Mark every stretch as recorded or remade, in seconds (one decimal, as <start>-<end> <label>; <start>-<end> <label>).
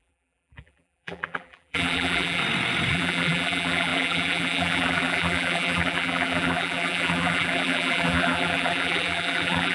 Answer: 0.0-2.4 remade; 2.4-2.9 recorded; 2.9-9.7 remade